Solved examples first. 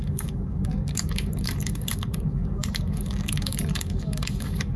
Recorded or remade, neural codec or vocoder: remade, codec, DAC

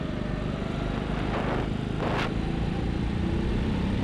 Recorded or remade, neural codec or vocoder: recorded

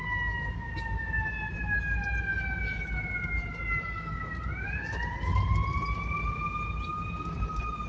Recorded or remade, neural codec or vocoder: recorded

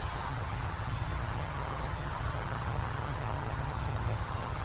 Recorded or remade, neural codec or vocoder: remade, vocoder, HiFi-GAN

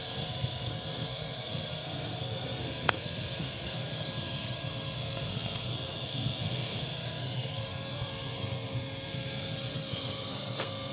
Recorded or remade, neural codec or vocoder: remade, codec, SNAC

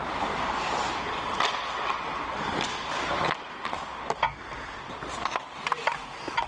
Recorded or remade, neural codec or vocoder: recorded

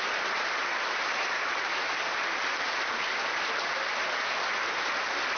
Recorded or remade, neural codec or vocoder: recorded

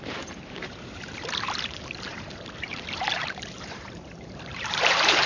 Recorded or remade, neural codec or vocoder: remade, vocoder, BigVGAN v2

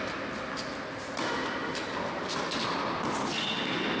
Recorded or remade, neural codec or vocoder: recorded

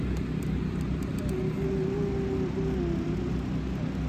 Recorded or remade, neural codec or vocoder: recorded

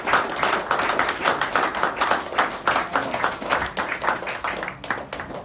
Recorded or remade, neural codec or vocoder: recorded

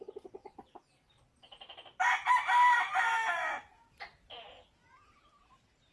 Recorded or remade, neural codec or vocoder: recorded